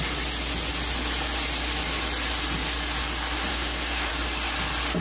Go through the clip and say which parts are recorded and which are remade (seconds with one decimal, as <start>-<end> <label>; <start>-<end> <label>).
0.0-3.5 recorded; 3.5-4.1 remade; 4.1-5.0 recorded